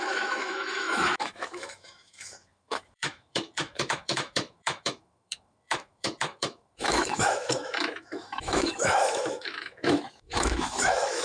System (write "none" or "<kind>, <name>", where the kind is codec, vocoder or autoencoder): autoencoder, DAC-VAE